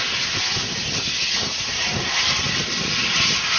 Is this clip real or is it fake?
real